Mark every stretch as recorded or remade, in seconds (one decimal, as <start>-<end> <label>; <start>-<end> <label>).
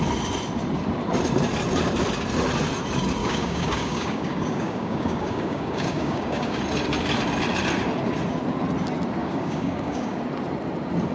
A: 0.0-3.2 recorded; 3.2-6.6 remade; 6.6-9.2 recorded; 9.2-10.2 remade; 10.2-11.1 recorded